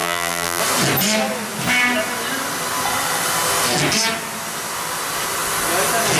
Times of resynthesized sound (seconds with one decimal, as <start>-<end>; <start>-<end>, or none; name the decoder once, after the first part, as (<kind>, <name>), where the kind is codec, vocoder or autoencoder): 0.0-0.6 (vocoder, BigVGAN v2)